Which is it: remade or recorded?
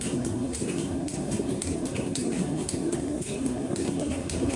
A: remade